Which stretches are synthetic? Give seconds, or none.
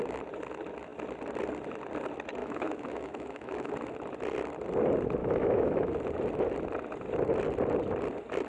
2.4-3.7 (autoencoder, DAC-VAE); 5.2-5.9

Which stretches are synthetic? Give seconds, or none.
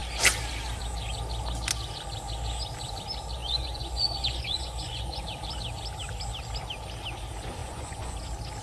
3.4-5.2 (vocoder, Vocos); 7.6-8.1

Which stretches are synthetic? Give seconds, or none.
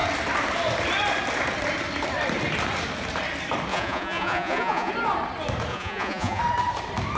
3.7-4.9 (vocoder, Vocos); 5.7-6.4